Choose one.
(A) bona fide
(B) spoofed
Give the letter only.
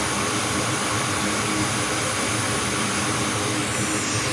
A